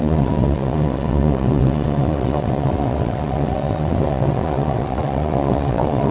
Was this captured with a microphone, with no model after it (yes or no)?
no